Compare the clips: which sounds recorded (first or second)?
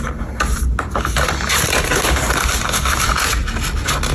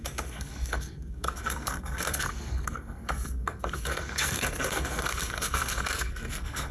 first